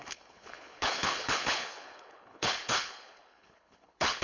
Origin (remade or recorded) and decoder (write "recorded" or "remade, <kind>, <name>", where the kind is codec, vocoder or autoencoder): remade, codec, HILCodec